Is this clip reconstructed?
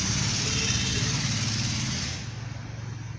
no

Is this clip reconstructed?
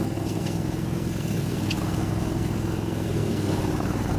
yes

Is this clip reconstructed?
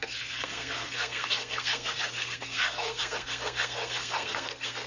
yes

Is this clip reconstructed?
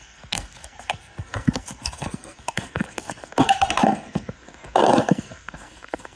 yes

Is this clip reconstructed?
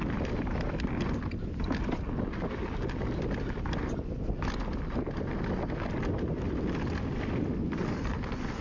no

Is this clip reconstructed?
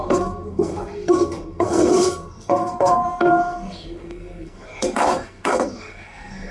yes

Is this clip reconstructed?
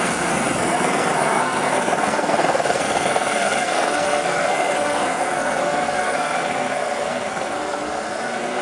yes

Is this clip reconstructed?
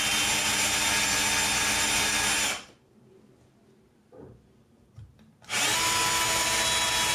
no